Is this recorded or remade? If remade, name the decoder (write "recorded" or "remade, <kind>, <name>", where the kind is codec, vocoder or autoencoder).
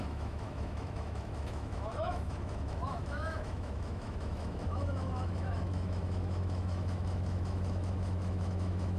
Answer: remade, autoencoder, DAC-VAE